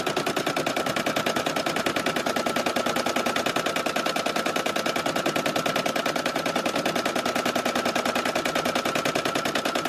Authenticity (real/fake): real